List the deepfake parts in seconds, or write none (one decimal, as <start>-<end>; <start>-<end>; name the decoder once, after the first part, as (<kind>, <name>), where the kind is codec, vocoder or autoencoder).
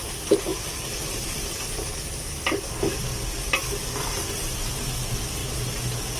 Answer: none